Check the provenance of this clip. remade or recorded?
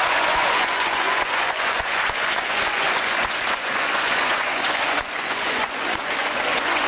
remade